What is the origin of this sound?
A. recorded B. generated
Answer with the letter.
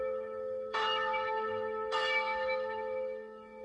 B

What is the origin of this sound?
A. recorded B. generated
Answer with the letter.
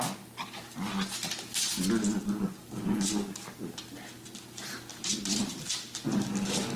A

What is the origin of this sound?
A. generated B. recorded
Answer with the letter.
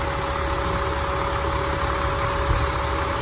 B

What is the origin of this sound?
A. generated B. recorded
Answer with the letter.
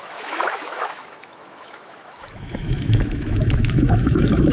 A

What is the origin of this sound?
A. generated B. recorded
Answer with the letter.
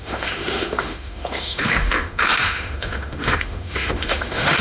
A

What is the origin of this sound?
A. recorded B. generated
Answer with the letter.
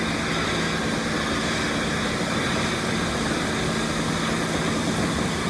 A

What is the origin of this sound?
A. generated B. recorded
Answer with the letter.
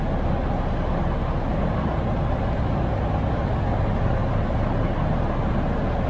B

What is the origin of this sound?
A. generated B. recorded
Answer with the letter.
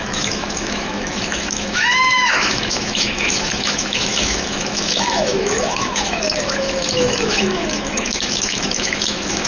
A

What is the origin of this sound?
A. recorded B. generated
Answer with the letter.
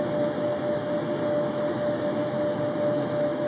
B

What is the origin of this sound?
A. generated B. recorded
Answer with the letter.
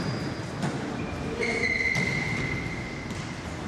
B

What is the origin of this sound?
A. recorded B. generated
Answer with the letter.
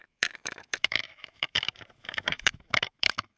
B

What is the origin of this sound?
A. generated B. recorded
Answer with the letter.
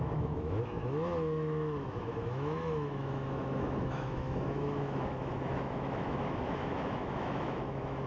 A